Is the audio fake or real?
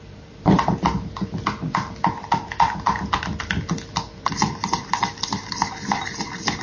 real